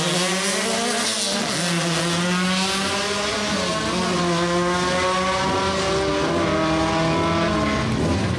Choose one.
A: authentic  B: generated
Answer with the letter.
A